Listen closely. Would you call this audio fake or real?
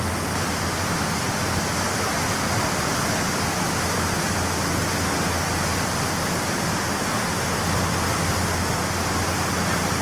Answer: real